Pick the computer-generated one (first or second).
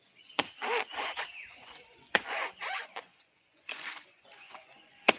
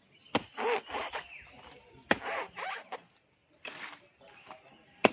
first